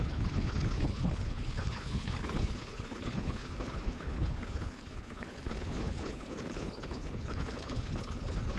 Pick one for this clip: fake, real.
fake